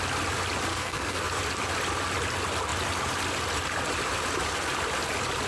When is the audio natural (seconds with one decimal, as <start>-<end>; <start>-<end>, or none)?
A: 0.0-0.7; 1.4-5.5